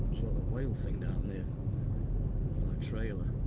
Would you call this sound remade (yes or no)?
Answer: no